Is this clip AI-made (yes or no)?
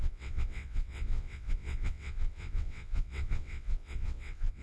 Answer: yes